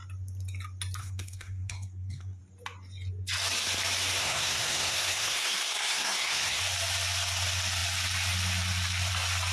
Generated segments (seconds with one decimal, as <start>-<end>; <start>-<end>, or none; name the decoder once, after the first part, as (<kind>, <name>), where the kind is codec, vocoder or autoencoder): 1.0-2.4 (codec, SNAC); 4.2-6.6